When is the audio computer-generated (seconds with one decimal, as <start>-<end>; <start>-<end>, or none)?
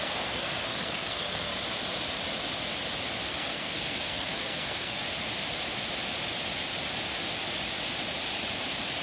0.0-1.5; 3.3-5.0